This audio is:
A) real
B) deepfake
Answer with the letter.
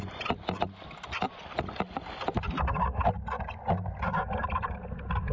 A